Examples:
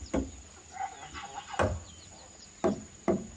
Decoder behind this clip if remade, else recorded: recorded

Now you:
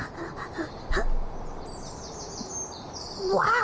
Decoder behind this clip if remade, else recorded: recorded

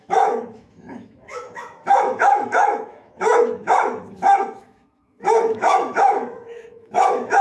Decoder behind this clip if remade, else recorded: remade, autoencoder, DAC-VAE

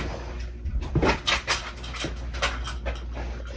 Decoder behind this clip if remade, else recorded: recorded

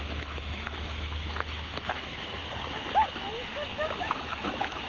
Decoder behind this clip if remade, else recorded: remade, autoencoder, DAC-VAE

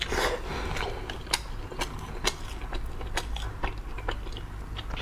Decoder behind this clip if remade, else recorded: recorded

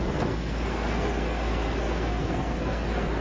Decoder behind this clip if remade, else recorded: remade, codec, SNAC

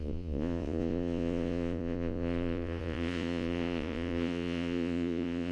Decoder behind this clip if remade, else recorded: remade, vocoder, Vocos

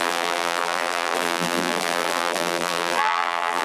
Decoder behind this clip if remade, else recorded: remade, vocoder, BigVGAN v2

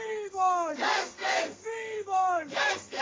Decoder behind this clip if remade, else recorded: remade, codec, SNAC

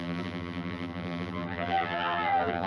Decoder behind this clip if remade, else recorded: remade, vocoder, BigVGAN v2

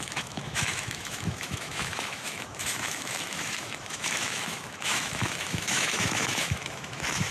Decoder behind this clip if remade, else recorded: remade, autoencoder, DAC-VAE